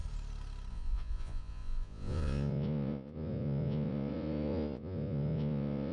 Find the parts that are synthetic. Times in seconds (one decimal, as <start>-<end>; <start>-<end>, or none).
0.7-5.9